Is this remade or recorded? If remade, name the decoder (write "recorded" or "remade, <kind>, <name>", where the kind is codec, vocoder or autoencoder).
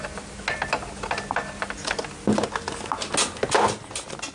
recorded